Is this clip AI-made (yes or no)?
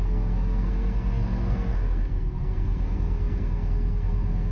yes